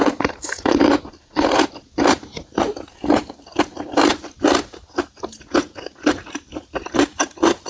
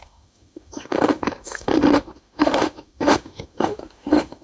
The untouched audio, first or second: first